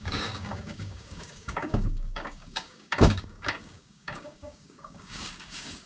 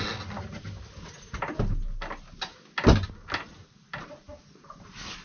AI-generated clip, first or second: first